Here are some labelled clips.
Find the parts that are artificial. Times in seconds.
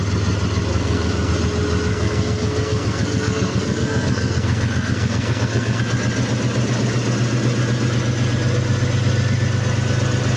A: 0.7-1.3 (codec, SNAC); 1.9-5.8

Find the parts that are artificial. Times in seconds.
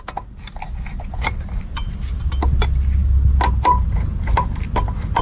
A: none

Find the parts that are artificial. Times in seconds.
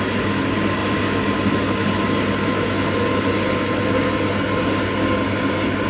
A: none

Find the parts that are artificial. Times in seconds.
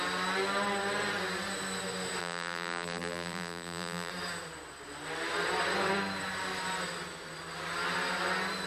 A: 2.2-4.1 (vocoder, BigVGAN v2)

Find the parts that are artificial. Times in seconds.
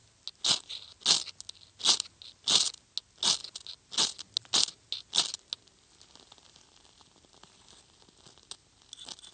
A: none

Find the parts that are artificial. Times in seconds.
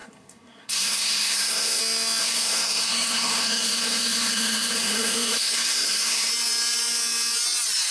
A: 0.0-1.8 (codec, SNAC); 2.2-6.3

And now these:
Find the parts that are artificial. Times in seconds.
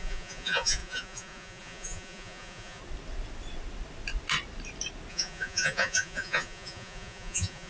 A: 0.0-2.8 (vocoder, Vocos); 5.1-7.7